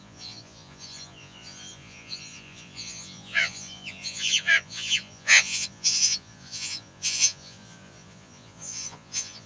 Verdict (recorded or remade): remade